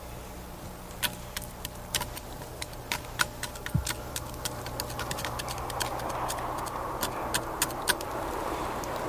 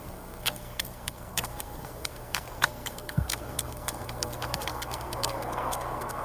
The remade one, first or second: second